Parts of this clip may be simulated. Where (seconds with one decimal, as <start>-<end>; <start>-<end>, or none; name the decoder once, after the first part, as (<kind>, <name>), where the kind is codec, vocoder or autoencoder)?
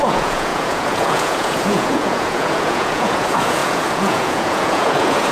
0.0-5.3 (vocoder, Vocos)